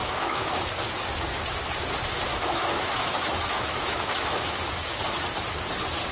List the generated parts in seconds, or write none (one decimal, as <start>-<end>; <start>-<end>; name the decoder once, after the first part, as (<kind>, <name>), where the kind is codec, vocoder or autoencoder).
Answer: 0.0-0.7 (autoencoder, DAC-VAE); 2.3-4.6